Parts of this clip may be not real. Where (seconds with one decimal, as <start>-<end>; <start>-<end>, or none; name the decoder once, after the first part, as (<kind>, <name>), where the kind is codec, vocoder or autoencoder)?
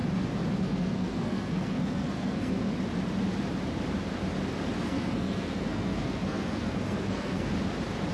0.6-2.7 (codec, SNAC); 4.8-7.5